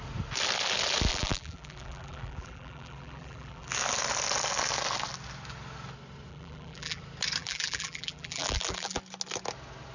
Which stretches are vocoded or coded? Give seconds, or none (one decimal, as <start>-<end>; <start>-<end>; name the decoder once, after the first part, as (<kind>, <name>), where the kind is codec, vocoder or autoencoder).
1.1-3.7 (vocoder, BigVGAN v2); 6.3-7.0; 7.4-9.0